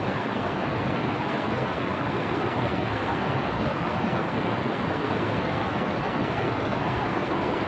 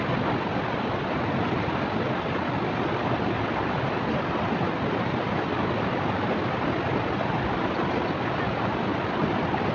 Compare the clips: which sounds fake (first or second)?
first